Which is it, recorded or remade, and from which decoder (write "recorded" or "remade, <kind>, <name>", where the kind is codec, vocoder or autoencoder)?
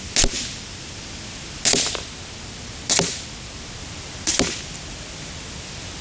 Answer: recorded